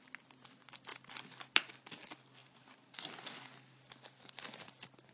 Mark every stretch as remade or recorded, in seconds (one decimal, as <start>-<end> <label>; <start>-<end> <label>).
0.0-5.1 recorded